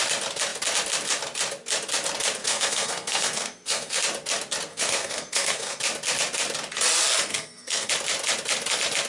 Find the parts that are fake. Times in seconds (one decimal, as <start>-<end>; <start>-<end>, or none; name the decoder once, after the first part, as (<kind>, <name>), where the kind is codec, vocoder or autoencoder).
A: 2.4-4.0 (codec, SNAC); 4.7-5.8; 7.3-7.9